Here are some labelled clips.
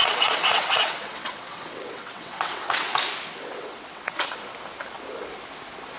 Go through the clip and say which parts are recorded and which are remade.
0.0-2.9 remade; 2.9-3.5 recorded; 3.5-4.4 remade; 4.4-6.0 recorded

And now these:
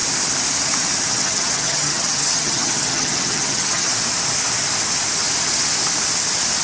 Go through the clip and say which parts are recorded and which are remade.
0.0-1.1 recorded; 1.1-3.9 remade; 3.9-6.6 recorded